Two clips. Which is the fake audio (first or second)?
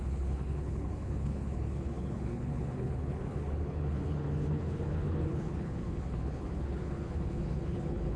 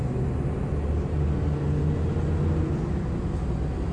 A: first